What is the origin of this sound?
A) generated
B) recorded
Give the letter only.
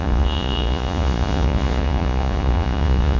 A